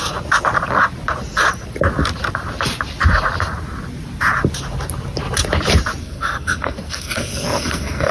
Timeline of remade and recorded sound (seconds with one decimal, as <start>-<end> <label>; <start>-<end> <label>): 0.0-6.0 recorded; 6.0-8.1 remade